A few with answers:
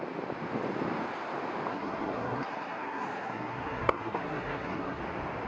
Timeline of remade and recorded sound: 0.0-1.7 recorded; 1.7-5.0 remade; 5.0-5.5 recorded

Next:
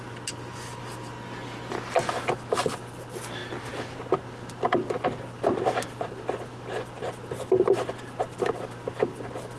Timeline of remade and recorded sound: 0.0-9.6 recorded

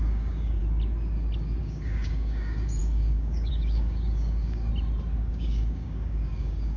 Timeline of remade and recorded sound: 0.0-0.6 remade; 0.6-1.6 recorded; 1.6-4.7 remade; 4.7-5.3 recorded; 5.3-6.8 remade

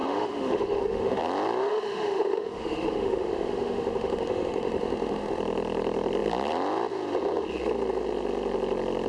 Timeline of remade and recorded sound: 0.0-1.2 remade; 1.2-1.7 recorded; 1.7-5.4 remade; 5.4-9.1 recorded

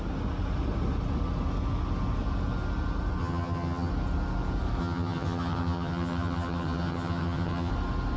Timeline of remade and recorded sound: 0.0-3.2 recorded; 3.2-3.9 remade; 3.9-4.8 recorded; 4.8-7.7 remade; 7.7-8.2 recorded

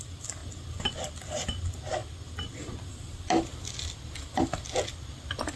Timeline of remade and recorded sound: 0.0-5.6 recorded